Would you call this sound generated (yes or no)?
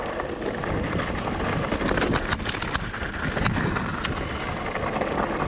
no